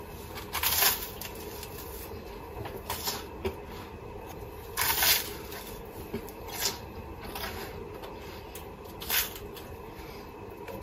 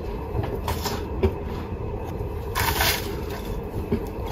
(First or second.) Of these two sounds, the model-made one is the second